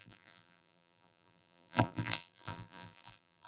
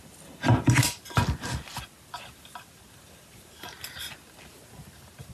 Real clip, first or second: second